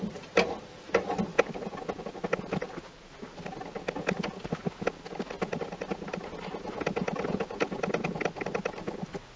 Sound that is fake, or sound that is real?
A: real